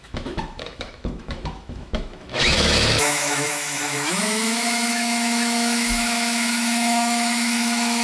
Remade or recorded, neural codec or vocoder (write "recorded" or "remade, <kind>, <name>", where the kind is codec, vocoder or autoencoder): remade, autoencoder, DAC-VAE